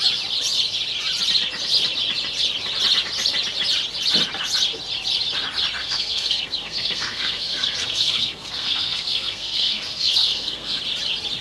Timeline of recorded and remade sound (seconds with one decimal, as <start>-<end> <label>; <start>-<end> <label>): 0.0-5.8 recorded; 5.8-10.8 remade; 10.8-11.4 recorded

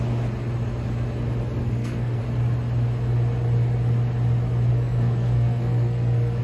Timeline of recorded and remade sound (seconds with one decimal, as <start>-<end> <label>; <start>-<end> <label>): 0.0-1.6 recorded; 1.6-2.2 remade; 2.2-4.7 recorded; 4.7-6.4 remade

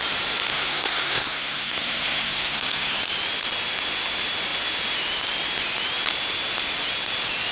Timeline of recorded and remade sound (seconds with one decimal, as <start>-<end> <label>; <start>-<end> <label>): 0.0-0.5 recorded; 0.5-3.0 remade; 3.0-7.5 recorded